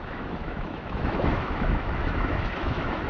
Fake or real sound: fake